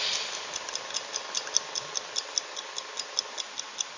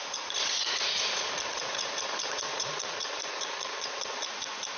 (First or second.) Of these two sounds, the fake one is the second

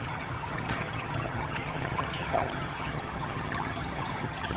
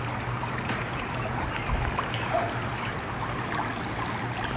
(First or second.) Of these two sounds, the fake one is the first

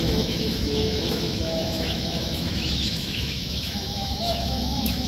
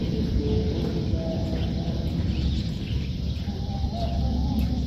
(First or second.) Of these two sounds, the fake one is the first